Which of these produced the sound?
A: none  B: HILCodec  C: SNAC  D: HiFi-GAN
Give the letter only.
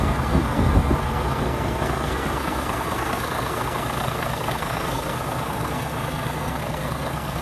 C